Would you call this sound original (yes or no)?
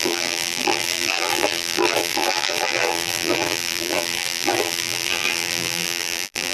no